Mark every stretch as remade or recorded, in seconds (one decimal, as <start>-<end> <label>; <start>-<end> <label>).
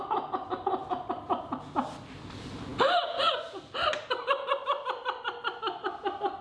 0.0-0.8 recorded; 0.8-1.4 remade; 1.4-6.4 recorded